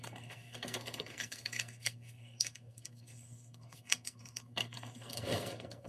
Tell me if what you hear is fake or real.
fake